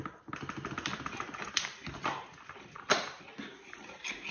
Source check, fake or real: real